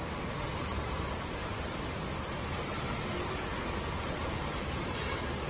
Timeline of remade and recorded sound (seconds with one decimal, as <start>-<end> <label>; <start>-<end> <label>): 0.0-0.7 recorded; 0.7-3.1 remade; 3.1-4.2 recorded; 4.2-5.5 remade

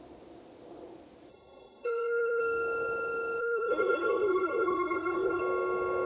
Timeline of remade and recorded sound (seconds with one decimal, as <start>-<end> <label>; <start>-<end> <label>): 0.0-1.3 recorded; 1.3-2.4 remade; 2.4-3.4 recorded; 3.4-5.4 remade; 5.4-6.1 recorded

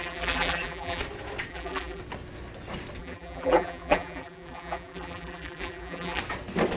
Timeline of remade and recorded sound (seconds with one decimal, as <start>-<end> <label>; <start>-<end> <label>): 0.0-1.0 remade; 1.0-1.5 recorded; 1.5-2.0 remade; 2.0-3.0 recorded; 3.0-6.2 remade; 6.2-6.8 recorded

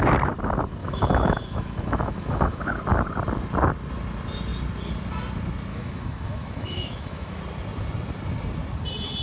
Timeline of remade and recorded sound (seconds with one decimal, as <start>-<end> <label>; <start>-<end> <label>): 0.0-0.8 recorded; 0.8-2.6 remade; 2.6-5.7 recorded; 5.7-7.4 remade; 7.4-9.2 recorded